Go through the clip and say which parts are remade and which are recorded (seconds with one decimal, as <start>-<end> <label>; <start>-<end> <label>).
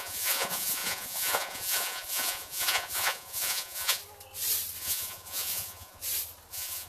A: 0.0-4.0 remade; 4.0-4.8 recorded; 4.8-6.0 remade; 6.0-6.5 recorded; 6.5-6.9 remade